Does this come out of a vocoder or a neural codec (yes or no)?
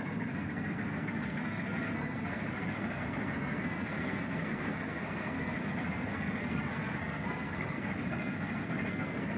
yes